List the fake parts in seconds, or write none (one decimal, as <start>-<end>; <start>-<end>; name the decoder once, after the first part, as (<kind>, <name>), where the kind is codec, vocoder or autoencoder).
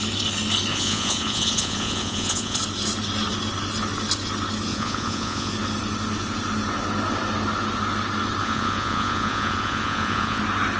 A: 0.7-2.6 (vocoder, Vocos); 4.7-5.5; 8.4-10.4